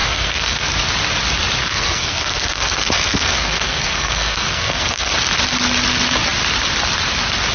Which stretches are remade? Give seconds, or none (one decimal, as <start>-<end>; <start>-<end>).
0.0-0.7; 1.6-5.1